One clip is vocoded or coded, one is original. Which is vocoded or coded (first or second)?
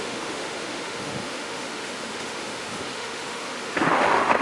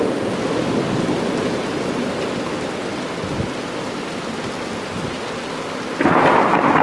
first